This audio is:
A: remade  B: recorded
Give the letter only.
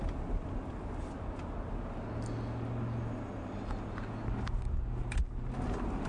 B